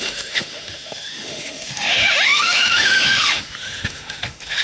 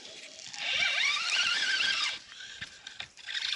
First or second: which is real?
second